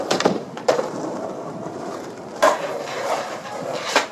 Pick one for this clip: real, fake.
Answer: fake